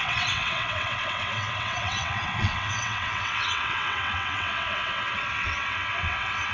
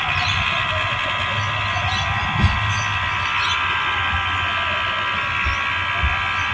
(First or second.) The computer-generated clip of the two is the first